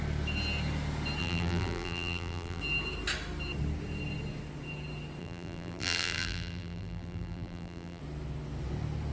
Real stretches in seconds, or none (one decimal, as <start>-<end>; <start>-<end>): 0.0-1.2; 2.6-5.2; 8.0-9.1